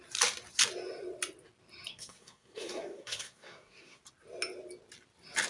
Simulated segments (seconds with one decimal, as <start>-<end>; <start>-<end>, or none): 1.9-4.0